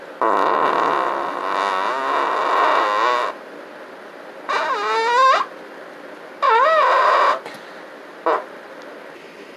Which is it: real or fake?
real